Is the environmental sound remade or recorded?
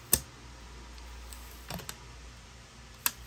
recorded